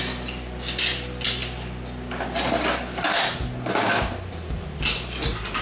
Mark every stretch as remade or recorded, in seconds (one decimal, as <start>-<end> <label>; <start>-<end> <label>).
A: 0.0-5.6 recorded